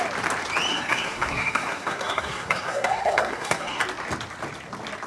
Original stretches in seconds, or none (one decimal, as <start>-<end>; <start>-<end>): 0.0-0.7; 3.8-5.1